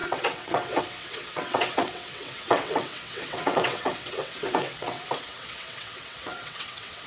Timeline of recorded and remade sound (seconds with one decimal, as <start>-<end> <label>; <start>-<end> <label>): 0.0-7.1 remade